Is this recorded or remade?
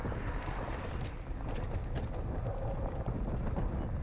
recorded